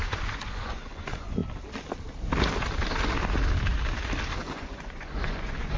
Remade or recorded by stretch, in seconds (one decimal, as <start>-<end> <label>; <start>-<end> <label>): 0.0-1.4 remade; 1.4-4.5 recorded; 4.5-5.8 remade